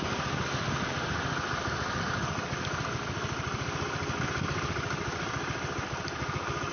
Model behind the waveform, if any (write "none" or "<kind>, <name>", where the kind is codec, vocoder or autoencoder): vocoder, BigVGAN v2